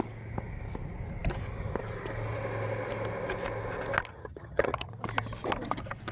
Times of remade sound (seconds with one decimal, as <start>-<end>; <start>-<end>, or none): 4.1-4.9